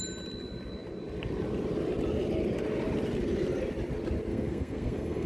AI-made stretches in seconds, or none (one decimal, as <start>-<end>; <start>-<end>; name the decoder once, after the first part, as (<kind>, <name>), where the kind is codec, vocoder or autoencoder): 4.3-5.3 (codec, SNAC)